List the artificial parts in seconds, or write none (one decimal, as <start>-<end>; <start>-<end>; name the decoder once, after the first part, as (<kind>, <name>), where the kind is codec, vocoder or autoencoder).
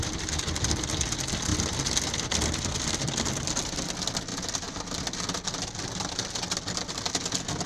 none